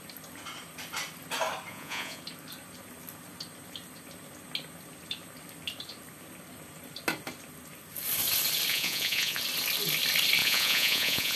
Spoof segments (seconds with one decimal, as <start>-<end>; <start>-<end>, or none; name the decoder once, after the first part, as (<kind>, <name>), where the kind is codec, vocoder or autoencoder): 1.7-2.2 (vocoder, Vocos); 8.7-9.4; 10.4-11.4